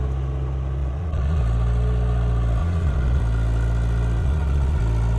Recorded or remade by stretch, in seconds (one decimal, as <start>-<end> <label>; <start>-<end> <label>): 0.0-0.8 recorded; 0.8-1.4 remade; 1.4-2.6 recorded; 2.6-3.2 remade; 3.2-4.2 recorded; 4.2-4.8 remade; 4.8-5.2 recorded